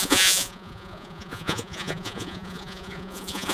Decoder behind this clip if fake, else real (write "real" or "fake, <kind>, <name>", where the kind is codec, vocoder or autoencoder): fake, vocoder, Vocos